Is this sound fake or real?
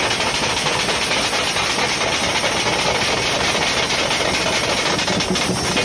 real